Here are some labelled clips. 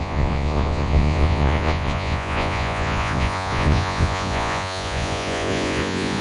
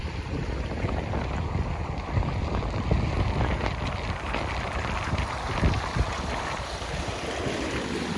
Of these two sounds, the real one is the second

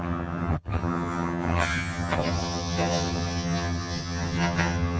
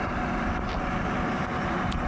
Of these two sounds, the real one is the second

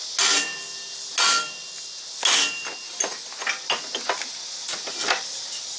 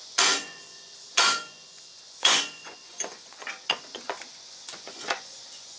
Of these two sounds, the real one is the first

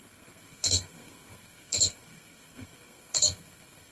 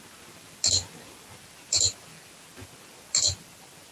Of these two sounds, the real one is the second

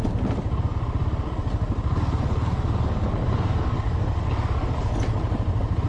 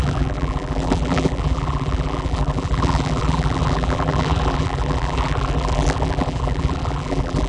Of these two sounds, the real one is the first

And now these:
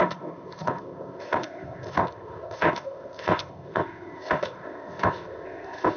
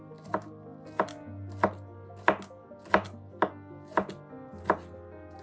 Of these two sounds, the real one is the second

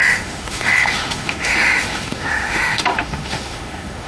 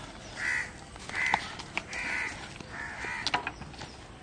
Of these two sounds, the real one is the second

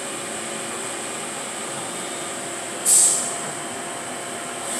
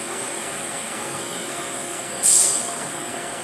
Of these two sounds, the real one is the first